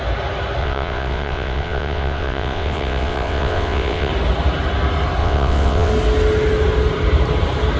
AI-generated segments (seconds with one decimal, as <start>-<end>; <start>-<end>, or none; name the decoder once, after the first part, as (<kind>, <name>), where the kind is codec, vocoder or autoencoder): 0.6-4.1 (vocoder, WaveNeXt); 5.2-5.9